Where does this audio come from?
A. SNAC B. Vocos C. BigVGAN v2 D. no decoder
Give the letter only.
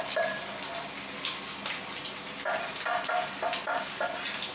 D